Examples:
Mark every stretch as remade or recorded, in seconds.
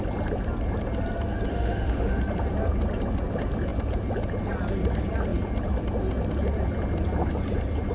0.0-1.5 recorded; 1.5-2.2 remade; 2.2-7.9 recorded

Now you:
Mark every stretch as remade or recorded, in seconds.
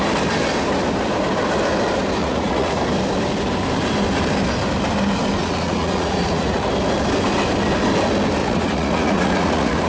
0.0-2.2 recorded; 2.2-2.8 remade; 2.8-5.4 recorded; 5.4-6.7 remade; 6.7-8.4 recorded; 8.4-9.9 remade